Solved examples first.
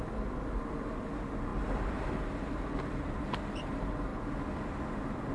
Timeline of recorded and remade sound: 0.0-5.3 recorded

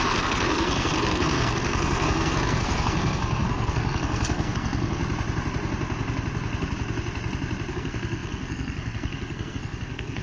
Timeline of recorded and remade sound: 0.0-5.0 remade; 5.0-7.7 recorded; 7.7-10.2 remade

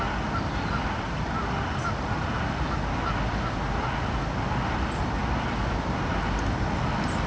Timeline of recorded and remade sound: 0.0-7.3 recorded

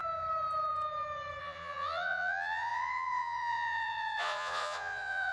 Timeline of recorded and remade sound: 0.0-1.4 recorded; 1.4-5.3 remade

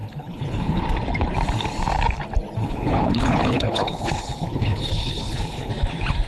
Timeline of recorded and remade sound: 0.0-0.8 remade; 0.8-2.6 recorded; 2.6-5.7 remade; 5.7-6.3 recorded

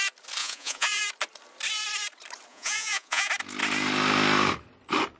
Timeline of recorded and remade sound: 0.0-0.4 recorded; 0.4-1.0 remade; 1.0-2.5 recorded; 2.5-3.3 remade; 3.3-5.2 recorded

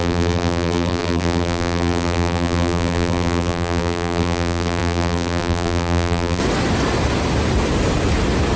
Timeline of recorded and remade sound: 0.0-6.4 remade; 6.4-8.6 recorded

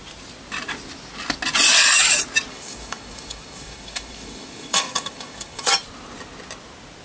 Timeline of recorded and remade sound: 0.0-2.5 recorded; 2.5-5.7 remade; 5.7-7.0 recorded